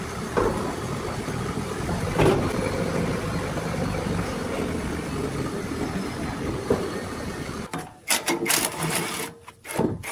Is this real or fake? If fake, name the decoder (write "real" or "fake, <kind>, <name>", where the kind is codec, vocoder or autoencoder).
real